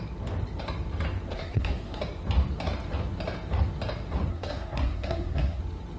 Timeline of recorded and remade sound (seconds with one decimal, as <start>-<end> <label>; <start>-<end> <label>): 0.0-1.3 recorded; 1.3-2.0 remade; 2.0-4.3 recorded; 4.3-5.6 remade; 5.6-6.0 recorded